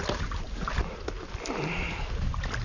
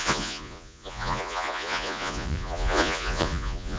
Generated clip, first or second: second